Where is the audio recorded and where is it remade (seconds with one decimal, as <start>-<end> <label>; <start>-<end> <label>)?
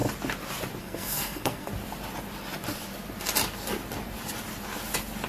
0.0-0.8 recorded; 0.8-1.7 remade; 1.7-5.3 recorded